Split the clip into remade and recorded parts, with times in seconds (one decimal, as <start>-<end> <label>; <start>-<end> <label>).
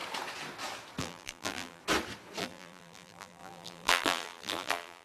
0.0-1.0 recorded; 1.0-1.8 remade; 1.8-2.4 recorded; 2.4-5.0 remade